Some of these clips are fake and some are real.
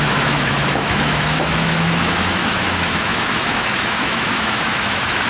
fake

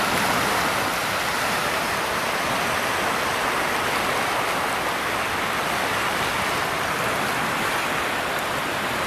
real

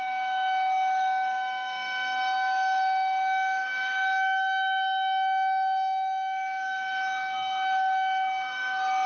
fake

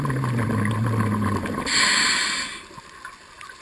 real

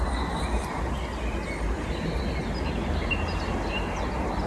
real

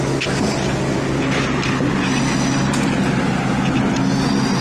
real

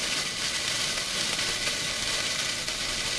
fake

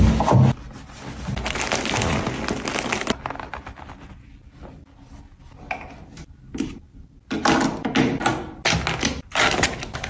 real